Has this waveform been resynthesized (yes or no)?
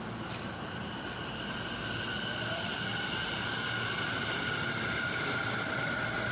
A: no